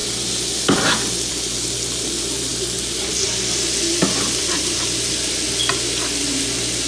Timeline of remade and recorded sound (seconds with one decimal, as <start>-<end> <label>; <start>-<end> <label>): 0.0-6.9 recorded